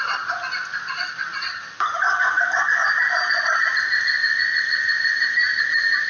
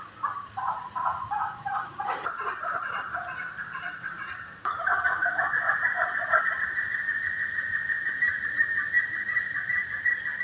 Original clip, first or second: first